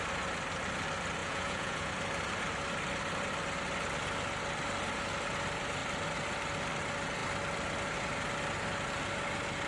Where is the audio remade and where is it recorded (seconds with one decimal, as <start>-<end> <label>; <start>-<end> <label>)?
0.0-1.2 recorded; 1.2-1.9 remade; 1.9-9.7 recorded